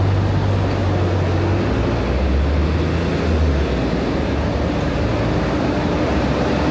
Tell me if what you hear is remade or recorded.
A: recorded